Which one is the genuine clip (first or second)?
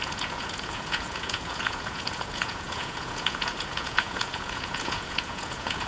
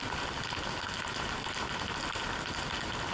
second